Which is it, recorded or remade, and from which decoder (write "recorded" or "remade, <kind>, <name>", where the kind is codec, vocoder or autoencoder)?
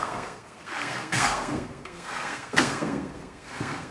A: remade, codec, SNAC